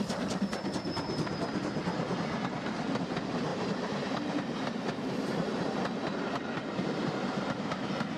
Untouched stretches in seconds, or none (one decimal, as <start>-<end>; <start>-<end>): 0.0-3.5; 7.4-8.2